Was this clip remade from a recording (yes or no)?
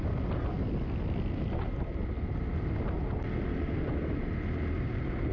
no